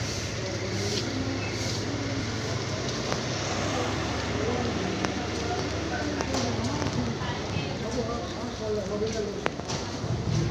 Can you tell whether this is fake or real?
real